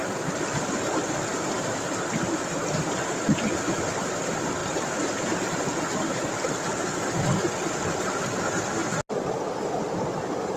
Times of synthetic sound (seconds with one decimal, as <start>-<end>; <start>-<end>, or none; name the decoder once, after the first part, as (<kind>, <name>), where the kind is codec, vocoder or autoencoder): none

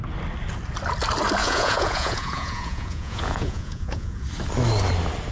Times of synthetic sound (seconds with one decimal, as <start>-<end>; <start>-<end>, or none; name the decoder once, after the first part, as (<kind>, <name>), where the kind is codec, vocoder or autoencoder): 1.4-4.2 (vocoder, Vocos)

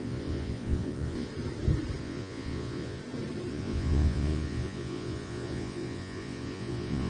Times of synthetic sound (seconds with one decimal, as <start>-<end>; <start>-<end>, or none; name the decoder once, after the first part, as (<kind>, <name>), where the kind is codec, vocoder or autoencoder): 0.0-1.3 (vocoder, Vocos); 2.0-3.0; 3.5-7.1